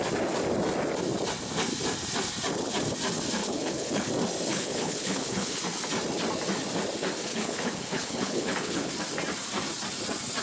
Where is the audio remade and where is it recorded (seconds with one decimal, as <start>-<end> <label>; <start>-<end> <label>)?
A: 0.0-3.4 recorded; 3.4-4.1 remade; 4.1-4.5 recorded; 4.5-5.6 remade; 5.6-7.3 recorded; 7.3-8.9 remade; 8.9-10.4 recorded